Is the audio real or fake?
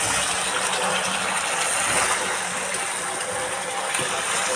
real